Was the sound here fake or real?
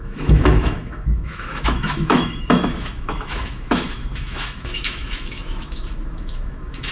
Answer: fake